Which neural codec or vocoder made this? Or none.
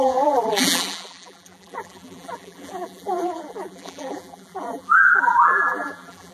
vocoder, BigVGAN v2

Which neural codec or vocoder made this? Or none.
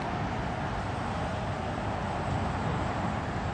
none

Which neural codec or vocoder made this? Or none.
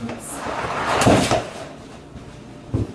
none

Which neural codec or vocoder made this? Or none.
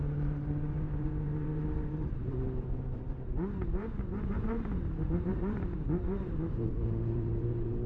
vocoder, BigVGAN v2